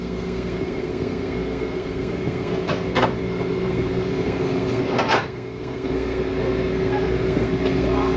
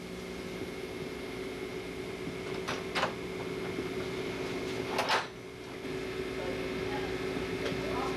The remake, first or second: first